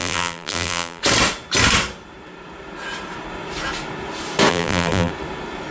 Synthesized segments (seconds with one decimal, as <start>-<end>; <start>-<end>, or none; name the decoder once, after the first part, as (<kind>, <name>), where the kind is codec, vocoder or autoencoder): 0.0-1.0 (vocoder, BigVGAN v2); 4.5-5.1